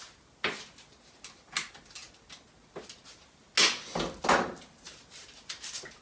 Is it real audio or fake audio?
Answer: real